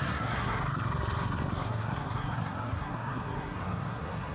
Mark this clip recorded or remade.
remade